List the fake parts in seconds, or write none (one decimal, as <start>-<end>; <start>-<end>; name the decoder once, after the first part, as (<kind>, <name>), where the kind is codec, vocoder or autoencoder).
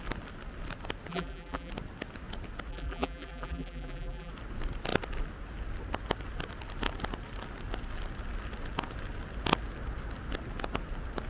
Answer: 1.1-1.7 (vocoder, BigVGAN v2); 2.7-4.3